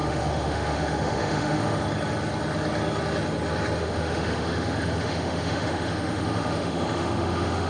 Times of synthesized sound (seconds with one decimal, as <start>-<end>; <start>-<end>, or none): 0.0-1.8; 3.8-7.7